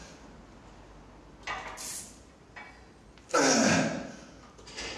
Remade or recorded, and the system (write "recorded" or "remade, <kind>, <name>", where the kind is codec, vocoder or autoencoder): recorded